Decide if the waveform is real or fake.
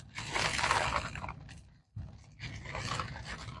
real